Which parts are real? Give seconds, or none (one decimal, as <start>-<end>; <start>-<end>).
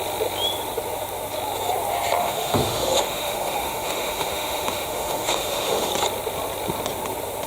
0.0-2.2; 5.9-7.5